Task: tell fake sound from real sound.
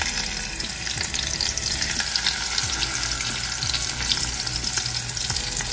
real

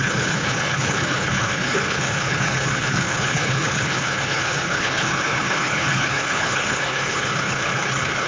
fake